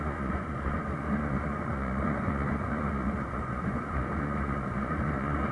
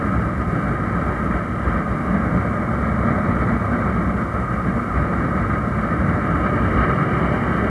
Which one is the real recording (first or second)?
second